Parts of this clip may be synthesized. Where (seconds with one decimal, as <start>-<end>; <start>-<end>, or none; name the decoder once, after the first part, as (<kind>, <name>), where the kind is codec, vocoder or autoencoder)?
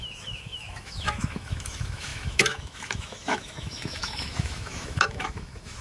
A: 0.0-5.8 (autoencoder, DAC-VAE)